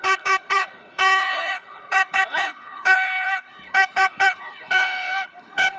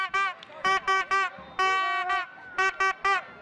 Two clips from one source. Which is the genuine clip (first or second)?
second